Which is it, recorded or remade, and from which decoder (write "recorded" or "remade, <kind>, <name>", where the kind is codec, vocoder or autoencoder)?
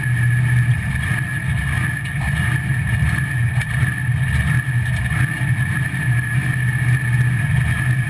recorded